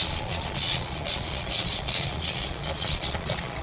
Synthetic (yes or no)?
yes